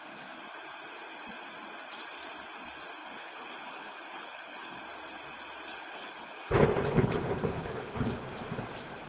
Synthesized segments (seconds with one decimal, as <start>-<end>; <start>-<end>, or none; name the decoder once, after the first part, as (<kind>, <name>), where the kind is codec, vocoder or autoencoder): 3.0-4.8 (codec, HILCodec); 5.7-8.1